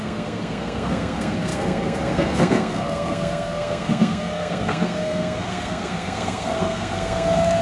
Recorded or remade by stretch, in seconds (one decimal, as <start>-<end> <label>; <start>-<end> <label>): 0.0-7.6 remade